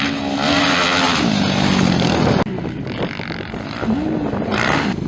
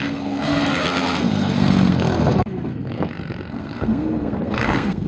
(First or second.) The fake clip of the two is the second